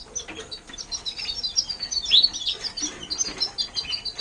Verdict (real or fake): real